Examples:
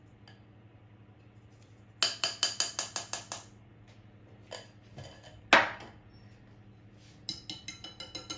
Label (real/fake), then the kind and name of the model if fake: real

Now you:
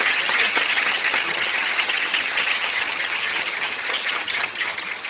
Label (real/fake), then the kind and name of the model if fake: fake, vocoder, HiFi-GAN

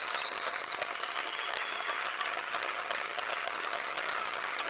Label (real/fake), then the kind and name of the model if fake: fake, vocoder, HiFi-GAN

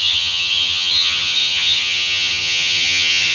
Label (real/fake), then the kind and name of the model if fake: fake, vocoder, HiFi-GAN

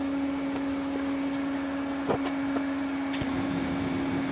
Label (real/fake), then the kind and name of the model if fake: real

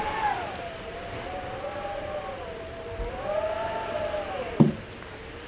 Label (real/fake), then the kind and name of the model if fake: real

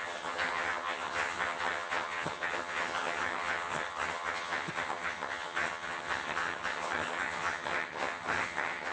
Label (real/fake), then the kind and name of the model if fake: fake, vocoder, HiFi-GAN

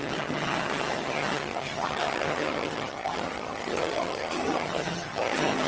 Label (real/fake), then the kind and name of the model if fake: fake, vocoder, HiFi-GAN